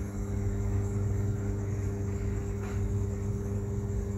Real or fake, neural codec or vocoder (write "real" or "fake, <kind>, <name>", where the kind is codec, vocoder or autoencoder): fake, codec, DAC